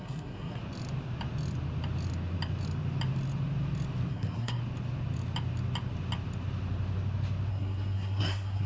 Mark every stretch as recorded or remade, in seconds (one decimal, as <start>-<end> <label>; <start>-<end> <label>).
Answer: 0.0-0.6 remade; 0.6-4.1 recorded; 4.1-4.6 remade; 4.6-7.5 recorded; 7.5-8.7 remade